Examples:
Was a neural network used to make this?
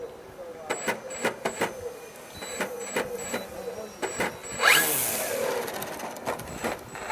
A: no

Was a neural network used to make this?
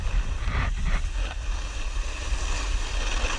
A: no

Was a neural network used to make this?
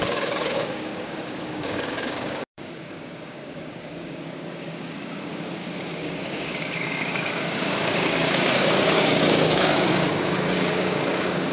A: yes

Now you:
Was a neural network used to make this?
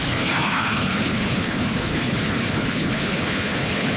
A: yes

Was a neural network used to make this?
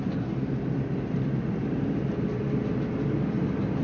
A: no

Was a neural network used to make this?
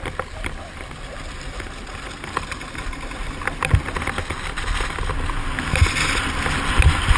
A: no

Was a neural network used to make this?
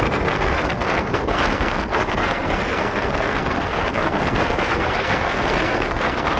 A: yes